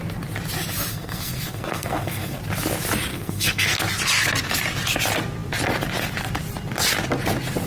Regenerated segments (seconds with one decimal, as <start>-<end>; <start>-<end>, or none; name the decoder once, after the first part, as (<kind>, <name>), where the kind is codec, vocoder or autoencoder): 0.9-2.4 (codec, SNAC); 3.1-3.8